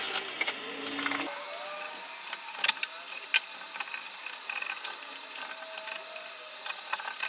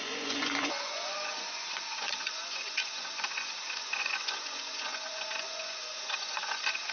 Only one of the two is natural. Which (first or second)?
first